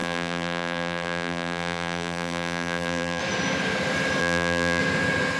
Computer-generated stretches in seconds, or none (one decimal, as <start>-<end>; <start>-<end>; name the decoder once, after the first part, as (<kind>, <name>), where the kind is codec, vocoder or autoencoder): 0.0-3.2 (vocoder, BigVGAN v2); 4.2-4.8